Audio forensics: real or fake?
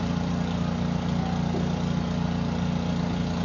real